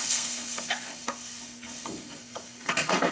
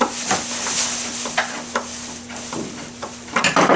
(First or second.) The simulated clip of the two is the first